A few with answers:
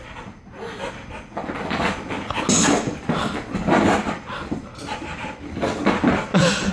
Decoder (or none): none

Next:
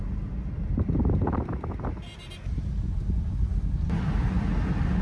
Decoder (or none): none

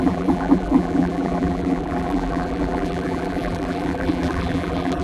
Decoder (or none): vocoder, BigVGAN v2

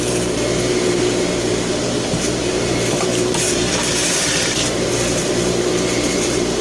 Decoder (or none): vocoder, BigVGAN v2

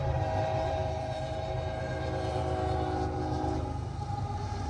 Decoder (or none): vocoder, BigVGAN v2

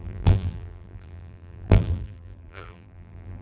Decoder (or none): vocoder, BigVGAN v2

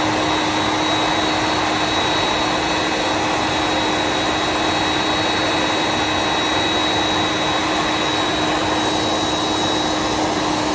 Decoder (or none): none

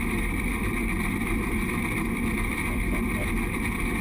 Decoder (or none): vocoder, BigVGAN v2